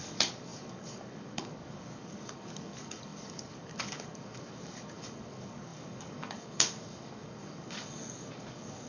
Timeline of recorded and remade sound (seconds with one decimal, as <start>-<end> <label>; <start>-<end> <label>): 0.0-8.9 remade